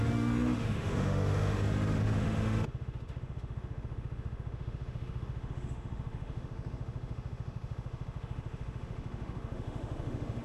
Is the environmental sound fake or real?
fake